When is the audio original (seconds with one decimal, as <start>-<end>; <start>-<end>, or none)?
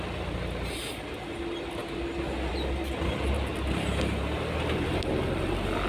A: 0.0-5.9